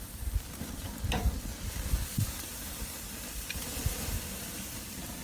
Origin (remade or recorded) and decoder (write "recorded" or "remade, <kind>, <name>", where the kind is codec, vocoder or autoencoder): remade, vocoder, BigVGAN v2